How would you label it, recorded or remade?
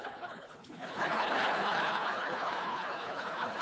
remade